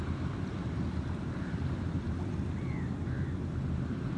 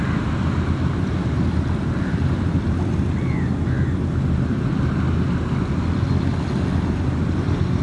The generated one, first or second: first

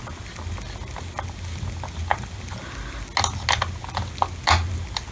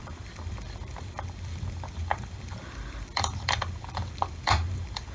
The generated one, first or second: second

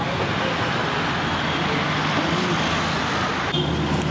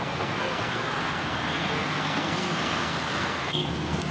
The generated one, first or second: second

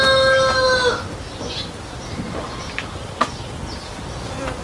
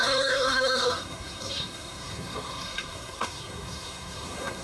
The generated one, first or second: second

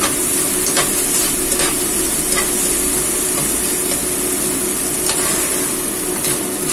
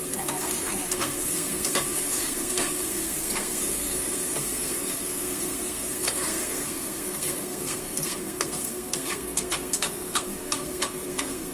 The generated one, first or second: second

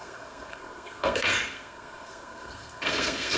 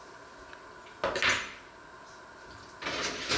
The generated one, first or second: first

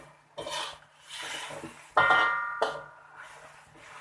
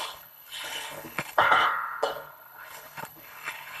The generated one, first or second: second